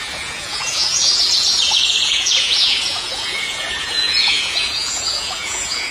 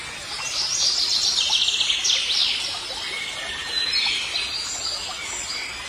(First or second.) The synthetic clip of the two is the first